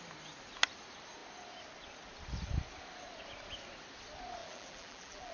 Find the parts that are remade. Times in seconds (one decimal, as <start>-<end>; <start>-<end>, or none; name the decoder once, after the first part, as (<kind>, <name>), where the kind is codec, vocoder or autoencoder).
4.4-5.3 (vocoder, BigVGAN v2)